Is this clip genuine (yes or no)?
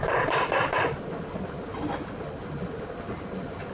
yes